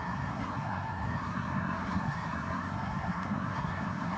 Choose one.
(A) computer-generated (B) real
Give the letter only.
A